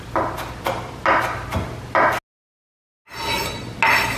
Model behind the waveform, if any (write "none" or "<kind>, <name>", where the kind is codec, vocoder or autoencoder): none